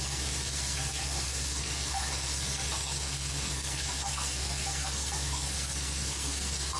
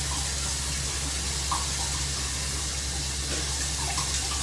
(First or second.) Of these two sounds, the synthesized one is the first